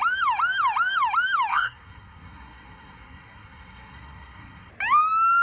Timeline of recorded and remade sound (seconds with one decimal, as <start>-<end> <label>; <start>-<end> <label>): 0.0-1.5 recorded; 1.5-4.7 remade; 4.7-5.4 recorded